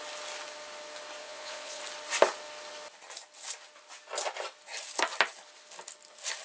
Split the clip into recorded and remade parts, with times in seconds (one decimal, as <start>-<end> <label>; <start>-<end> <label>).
0.0-1.2 recorded; 1.2-1.8 remade; 1.8-6.4 recorded